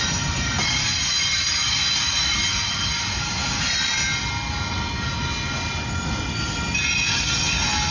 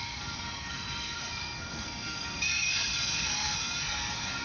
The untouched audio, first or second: first